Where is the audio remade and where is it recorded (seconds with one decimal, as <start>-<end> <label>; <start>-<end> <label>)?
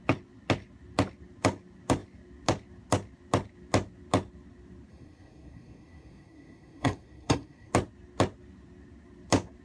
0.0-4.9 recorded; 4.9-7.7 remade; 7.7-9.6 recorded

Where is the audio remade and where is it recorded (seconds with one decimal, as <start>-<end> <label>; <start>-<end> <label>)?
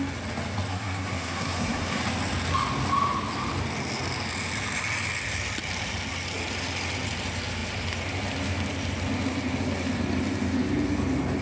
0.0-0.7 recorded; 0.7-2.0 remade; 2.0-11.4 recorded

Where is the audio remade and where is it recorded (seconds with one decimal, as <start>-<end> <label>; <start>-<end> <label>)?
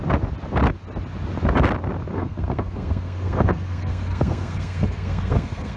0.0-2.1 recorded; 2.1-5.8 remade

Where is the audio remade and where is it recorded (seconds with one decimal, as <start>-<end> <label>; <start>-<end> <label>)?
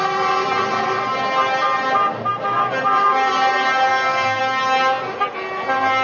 0.0-3.9 recorded; 3.9-4.4 remade; 4.4-6.0 recorded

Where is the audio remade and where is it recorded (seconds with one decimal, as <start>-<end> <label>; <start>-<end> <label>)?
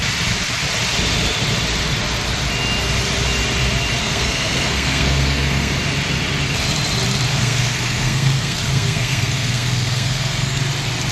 0.0-4.0 recorded; 4.0-5.7 remade; 5.7-7.3 recorded; 7.3-10.6 remade; 10.6-11.1 recorded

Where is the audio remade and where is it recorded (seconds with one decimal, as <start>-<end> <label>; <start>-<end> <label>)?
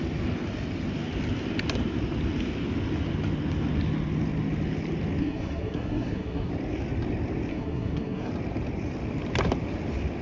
0.0-5.2 recorded; 5.2-6.5 remade; 6.5-7.5 recorded; 7.5-8.3 remade; 8.3-10.2 recorded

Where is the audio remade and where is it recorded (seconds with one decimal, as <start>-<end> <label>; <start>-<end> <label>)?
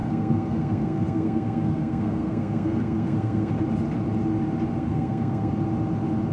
0.0-3.5 remade; 3.5-4.8 recorded; 4.8-5.5 remade; 5.5-6.3 recorded